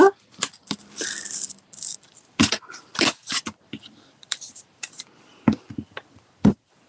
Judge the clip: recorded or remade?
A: remade